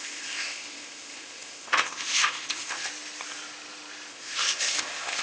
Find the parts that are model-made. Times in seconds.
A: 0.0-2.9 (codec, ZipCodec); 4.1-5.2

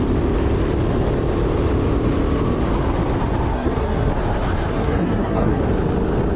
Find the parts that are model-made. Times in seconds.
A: 3.5-4.1 (codec, SNAC); 4.7-5.6

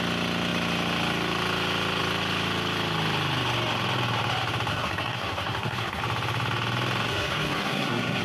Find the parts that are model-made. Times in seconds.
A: 4.7-6.0 (codec, SNAC); 7.1-8.2

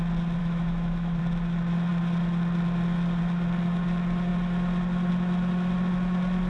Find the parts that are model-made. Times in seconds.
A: 0.4-1.2 (autoencoder, DAC-VAE)

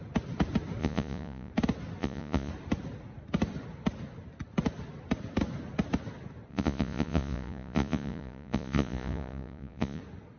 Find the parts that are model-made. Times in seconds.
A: 0.8-1.5 (vocoder, Vocos); 2.0-2.5; 6.5-10.0

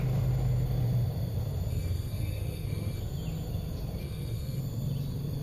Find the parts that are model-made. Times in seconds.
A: 1.7-3.0 (codec, SNAC); 4.0-4.6

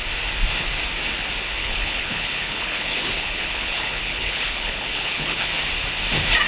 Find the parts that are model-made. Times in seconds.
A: 1.6-5.5 (codec, HILCodec)